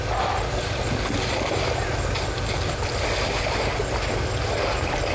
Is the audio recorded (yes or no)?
yes